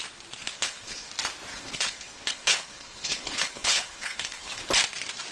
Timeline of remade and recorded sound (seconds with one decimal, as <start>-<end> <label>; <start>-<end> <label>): 0.0-0.4 recorded; 0.4-1.1 remade; 1.1-1.5 recorded; 1.5-4.7 remade; 4.7-5.3 recorded